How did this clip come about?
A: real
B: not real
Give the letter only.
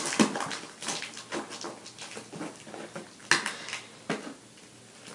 A